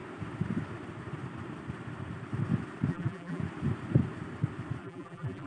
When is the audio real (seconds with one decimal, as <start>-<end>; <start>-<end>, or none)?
0.0-2.9; 3.4-4.8